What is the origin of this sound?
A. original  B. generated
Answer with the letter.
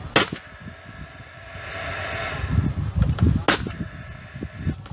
A